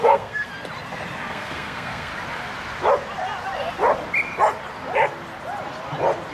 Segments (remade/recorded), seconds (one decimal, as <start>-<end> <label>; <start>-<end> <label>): 0.0-0.5 remade; 0.5-1.3 recorded; 1.3-2.1 remade; 2.1-6.3 recorded